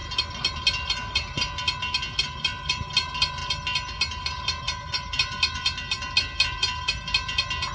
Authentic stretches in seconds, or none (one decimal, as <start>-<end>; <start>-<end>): 0.0-7.7